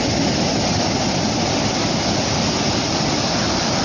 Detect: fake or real real